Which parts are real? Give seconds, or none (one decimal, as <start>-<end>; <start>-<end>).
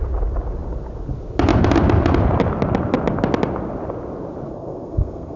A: 0.0-4.5